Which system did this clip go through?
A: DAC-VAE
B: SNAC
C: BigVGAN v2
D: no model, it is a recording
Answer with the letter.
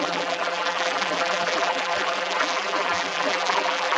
C